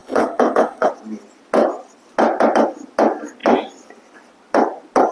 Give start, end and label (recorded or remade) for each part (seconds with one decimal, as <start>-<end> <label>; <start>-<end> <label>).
0.0-0.9 remade; 0.9-5.1 recorded